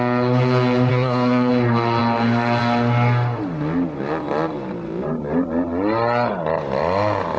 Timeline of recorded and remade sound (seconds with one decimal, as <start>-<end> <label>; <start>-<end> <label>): 0.0-0.9 recorded; 0.9-1.5 remade; 1.5-7.4 recorded